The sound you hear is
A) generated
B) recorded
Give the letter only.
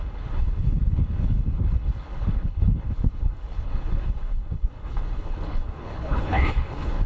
A